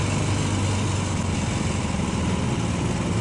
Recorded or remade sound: recorded